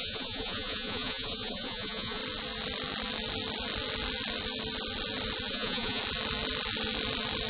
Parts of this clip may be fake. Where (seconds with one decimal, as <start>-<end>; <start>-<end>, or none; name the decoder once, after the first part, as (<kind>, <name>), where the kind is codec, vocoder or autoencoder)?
0.0-2.2 (vocoder, Vocos); 5.5-6.0